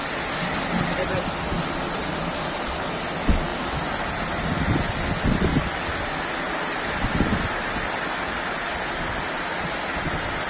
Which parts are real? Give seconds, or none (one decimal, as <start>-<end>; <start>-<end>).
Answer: 0.0-10.5